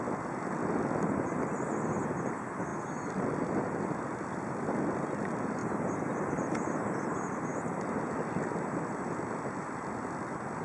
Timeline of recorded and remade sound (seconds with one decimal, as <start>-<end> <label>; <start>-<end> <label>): 0.0-10.6 recorded

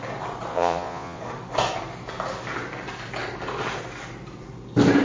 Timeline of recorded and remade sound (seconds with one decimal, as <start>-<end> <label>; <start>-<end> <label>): 0.0-0.5 recorded; 0.5-1.2 remade; 1.2-5.0 recorded

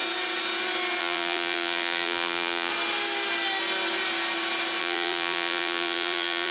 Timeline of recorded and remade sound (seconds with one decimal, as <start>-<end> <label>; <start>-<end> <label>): 0.0-1.0 recorded; 1.0-2.7 remade; 2.7-4.8 recorded; 4.8-6.5 remade

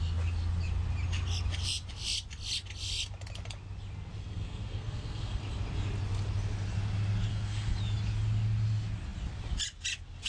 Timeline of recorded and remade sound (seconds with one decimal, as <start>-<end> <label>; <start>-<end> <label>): 0.0-4.2 recorded; 4.2-5.4 remade; 5.4-7.3 recorded; 7.3-7.8 remade; 7.8-10.3 recorded